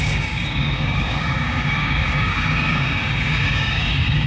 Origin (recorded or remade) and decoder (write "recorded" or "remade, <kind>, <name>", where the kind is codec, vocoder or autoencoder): remade, codec, DAC